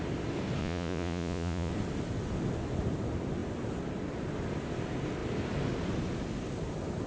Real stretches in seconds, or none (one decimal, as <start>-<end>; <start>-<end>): 0.0-0.6; 1.7-7.1